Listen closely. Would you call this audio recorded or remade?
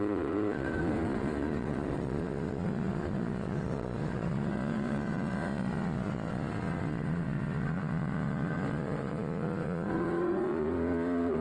remade